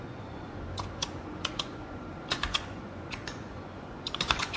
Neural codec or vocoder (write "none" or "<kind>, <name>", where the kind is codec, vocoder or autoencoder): vocoder, Vocos